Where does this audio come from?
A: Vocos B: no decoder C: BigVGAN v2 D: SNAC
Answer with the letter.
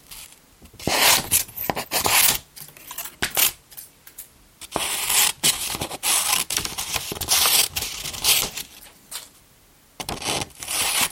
B